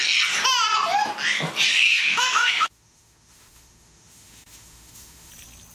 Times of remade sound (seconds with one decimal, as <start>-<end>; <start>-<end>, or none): 1.9-5.3